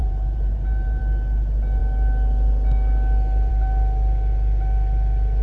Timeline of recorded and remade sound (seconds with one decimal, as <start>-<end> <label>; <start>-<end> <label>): 0.0-1.0 remade; 1.0-5.4 recorded